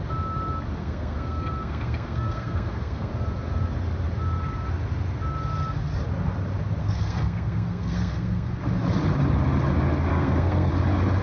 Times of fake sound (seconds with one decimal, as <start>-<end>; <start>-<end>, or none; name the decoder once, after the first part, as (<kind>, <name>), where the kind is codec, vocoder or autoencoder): 0.8-3.1 (codec, SNAC); 6.8-8.5; 10.1-10.7

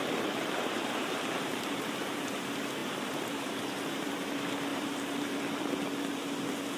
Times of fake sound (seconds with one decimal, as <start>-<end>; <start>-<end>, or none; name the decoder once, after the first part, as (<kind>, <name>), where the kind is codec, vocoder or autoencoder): 0.0-2.3 (vocoder, BigVGAN v2); 2.8-4.1; 4.7-5.4

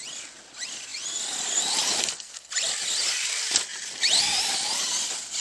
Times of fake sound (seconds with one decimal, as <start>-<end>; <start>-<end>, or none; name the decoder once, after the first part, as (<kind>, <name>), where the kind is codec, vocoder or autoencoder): 2.0-2.5 (codec, SNAC)

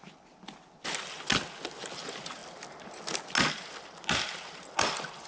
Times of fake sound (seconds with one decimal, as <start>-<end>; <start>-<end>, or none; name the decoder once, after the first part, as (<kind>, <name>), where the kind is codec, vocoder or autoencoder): none

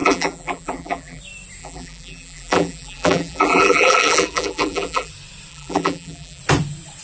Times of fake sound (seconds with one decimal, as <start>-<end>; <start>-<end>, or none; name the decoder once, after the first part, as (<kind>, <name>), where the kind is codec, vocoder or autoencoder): 0.0-1.2 (vocoder, BigVGAN v2); 1.6-5.1; 5.5-6.4

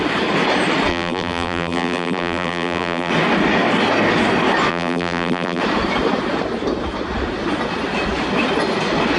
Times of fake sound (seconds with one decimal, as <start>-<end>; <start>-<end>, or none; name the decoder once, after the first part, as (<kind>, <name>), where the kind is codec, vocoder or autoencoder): 0.9-3.1 (vocoder, BigVGAN v2); 4.7-5.6

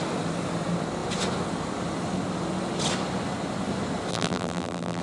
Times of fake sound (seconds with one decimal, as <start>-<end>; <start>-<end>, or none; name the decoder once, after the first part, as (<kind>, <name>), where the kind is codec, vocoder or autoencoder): 4.1-5.0 (vocoder, BigVGAN v2)

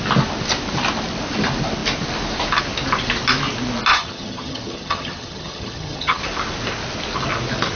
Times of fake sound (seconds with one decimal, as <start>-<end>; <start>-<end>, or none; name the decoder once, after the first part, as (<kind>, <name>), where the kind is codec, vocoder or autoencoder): 3.9-6.2 (vocoder, HiFi-GAN)